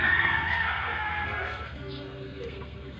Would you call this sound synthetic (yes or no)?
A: yes